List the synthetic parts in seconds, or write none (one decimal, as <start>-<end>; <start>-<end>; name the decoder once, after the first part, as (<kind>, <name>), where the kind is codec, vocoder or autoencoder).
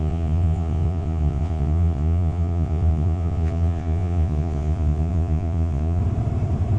0.0-6.0 (vocoder, Vocos)